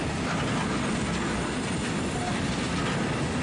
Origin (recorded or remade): recorded